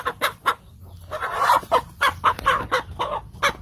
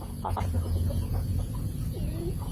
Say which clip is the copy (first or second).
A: second